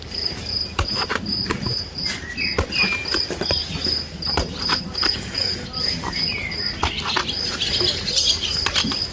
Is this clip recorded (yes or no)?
yes